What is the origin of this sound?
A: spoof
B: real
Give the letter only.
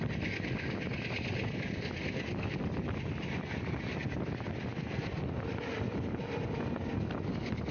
B